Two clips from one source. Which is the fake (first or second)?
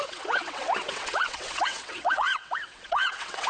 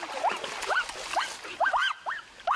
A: first